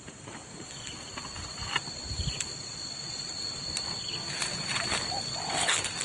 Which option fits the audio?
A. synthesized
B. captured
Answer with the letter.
B